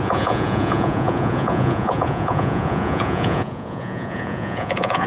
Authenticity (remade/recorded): remade